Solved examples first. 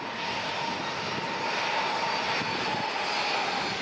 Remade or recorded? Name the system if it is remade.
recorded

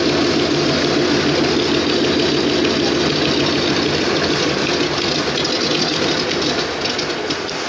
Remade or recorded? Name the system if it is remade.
recorded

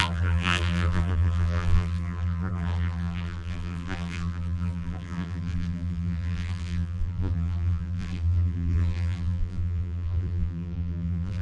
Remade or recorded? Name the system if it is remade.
remade, vocoder, BigVGAN v2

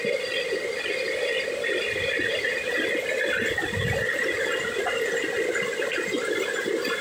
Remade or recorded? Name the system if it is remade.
recorded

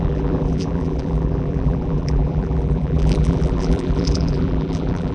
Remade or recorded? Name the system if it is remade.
remade, vocoder, BigVGAN v2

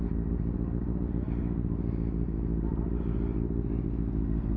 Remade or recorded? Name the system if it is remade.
recorded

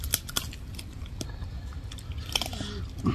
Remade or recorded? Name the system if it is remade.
recorded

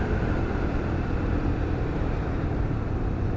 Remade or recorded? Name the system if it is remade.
remade, vocoder, BigVGAN v2